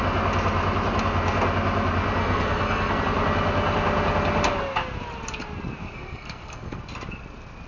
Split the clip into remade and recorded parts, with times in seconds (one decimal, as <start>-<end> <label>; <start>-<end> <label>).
0.0-2.2 recorded; 2.2-3.0 remade; 3.0-5.8 recorded; 5.8-6.8 remade; 6.8-7.7 recorded